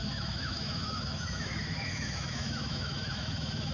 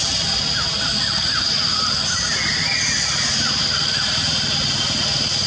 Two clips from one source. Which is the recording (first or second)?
second